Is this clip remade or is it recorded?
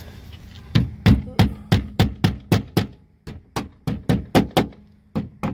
recorded